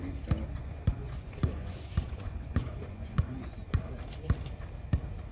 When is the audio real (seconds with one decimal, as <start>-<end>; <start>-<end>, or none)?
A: 0.0-0.6; 3.8-5.3